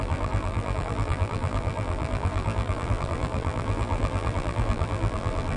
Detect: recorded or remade remade